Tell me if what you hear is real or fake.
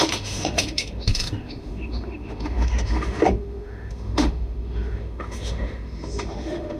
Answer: fake